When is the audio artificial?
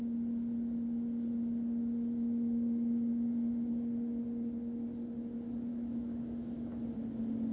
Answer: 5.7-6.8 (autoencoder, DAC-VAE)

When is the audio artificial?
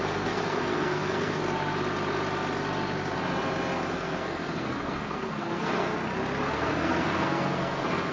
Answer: 0.0-1.4 (codec, SNAC); 3.9-5.9; 6.5-8.1